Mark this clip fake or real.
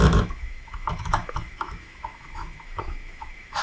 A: fake